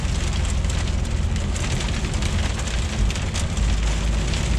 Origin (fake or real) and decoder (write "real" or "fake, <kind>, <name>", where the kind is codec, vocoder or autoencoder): real